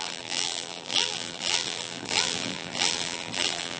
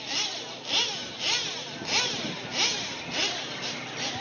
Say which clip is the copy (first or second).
first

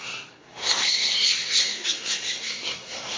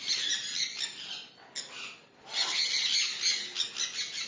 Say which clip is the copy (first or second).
first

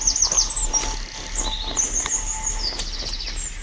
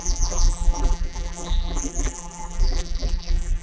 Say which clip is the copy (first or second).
second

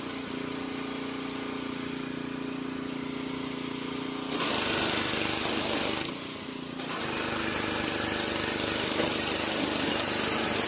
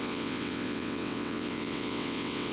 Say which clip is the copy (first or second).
second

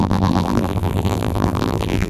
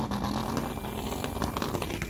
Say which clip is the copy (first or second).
first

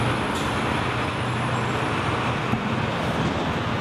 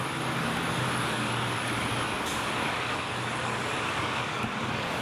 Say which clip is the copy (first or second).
second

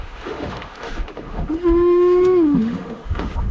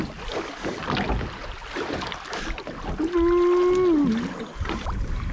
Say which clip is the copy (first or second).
first